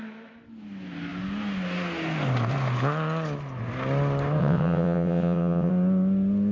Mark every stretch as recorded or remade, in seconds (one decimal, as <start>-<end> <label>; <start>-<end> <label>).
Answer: 0.0-4.4 recorded; 4.4-5.7 remade; 5.7-6.5 recorded